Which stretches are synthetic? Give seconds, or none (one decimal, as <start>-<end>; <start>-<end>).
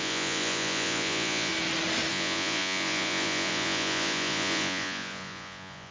0.0-1.5; 2.1-5.9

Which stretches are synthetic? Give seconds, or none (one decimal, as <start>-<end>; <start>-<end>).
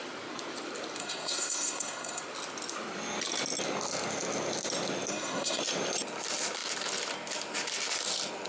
1.0-2.2; 5.1-5.6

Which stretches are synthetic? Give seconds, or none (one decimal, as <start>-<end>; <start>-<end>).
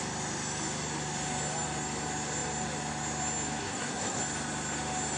3.6-4.2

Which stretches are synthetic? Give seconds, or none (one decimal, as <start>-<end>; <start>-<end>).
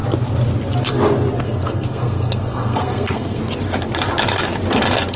1.4-3.4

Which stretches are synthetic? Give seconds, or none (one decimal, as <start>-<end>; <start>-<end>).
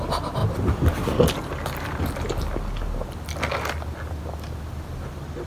none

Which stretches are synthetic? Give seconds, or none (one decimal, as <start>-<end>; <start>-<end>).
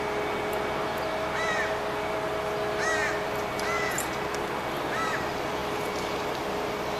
5.6-7.0